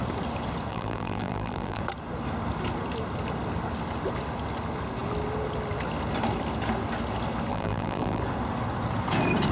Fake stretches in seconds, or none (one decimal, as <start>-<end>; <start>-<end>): 0.7-1.8; 7.5-8.2